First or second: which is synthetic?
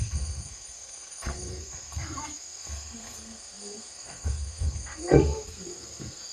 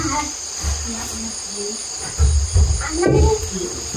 first